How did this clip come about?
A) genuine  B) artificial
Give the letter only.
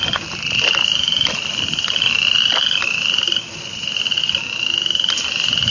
A